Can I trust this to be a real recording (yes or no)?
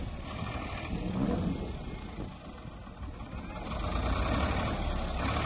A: yes